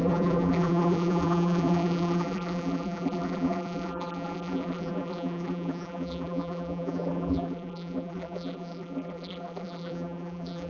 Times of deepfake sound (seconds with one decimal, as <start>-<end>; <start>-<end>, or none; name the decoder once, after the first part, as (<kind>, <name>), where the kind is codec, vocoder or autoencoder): 0.0-10.7 (vocoder, BigVGAN v2)